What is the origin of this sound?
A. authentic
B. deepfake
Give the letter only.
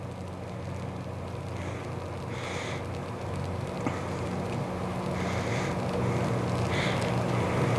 A